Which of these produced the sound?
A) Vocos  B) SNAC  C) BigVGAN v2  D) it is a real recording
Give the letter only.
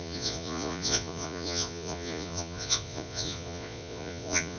A